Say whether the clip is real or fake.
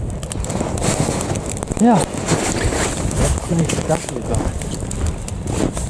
real